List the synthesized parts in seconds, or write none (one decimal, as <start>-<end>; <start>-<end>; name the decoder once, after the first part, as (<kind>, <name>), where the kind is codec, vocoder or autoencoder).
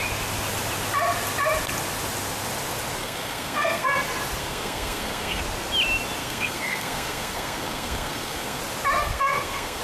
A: 3.0-4.0 (codec, SNAC); 4.4-5.4; 6.2-8.6; 9.0-9.8